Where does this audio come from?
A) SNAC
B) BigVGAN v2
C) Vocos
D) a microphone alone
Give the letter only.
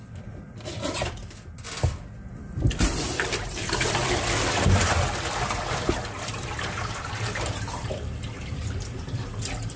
B